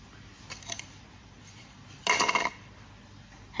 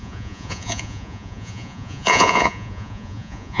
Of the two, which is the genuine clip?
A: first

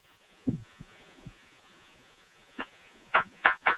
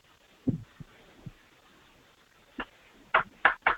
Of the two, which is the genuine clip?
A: second